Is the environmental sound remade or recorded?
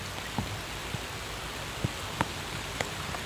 recorded